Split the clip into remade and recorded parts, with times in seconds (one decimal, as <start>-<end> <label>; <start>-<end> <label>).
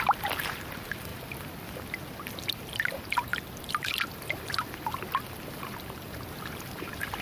0.0-7.2 recorded